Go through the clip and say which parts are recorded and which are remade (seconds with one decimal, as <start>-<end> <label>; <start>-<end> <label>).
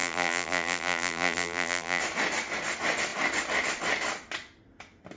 0.0-2.0 remade; 2.0-5.2 recorded